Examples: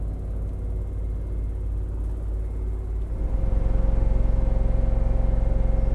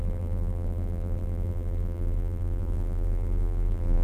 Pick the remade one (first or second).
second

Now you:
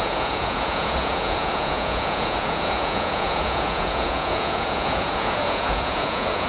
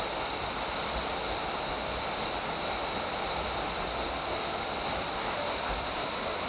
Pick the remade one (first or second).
first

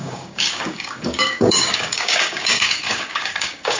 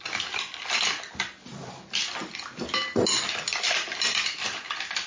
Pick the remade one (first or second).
first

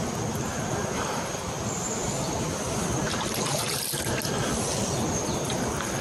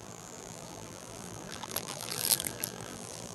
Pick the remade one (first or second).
second